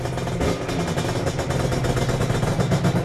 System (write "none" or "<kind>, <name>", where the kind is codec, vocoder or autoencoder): none